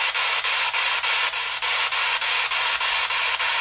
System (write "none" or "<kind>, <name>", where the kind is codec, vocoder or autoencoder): none